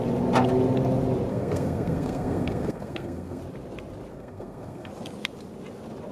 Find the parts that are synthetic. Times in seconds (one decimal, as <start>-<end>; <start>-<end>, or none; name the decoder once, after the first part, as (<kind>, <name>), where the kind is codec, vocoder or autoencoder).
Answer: 1.3-3.4 (codec, SNAC); 4.1-4.9